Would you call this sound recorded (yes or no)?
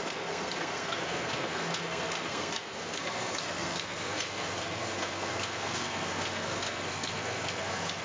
no